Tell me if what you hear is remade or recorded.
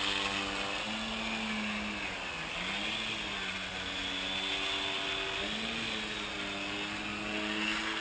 recorded